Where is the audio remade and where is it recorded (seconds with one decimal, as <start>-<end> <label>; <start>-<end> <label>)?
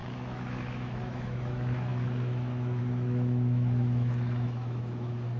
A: 0.0-5.4 remade